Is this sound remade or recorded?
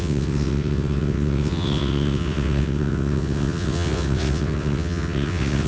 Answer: remade